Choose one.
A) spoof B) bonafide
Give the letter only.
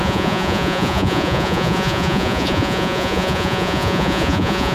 A